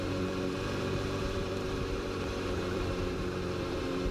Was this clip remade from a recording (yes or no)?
yes